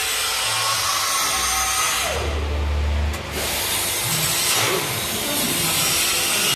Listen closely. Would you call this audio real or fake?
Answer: real